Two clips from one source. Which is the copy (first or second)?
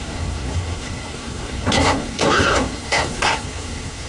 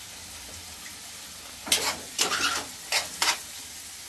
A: first